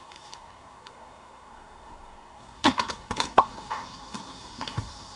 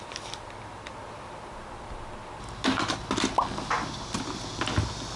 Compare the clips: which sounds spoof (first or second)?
first